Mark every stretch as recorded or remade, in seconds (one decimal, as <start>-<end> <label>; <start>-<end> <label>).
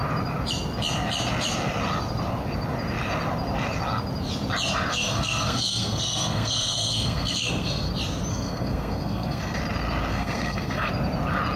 0.0-4.9 recorded; 4.9-7.9 remade; 7.9-8.3 recorded; 8.3-9.6 remade; 9.6-10.1 recorded; 10.1-10.9 remade; 10.9-11.6 recorded